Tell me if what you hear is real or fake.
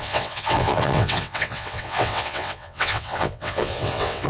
fake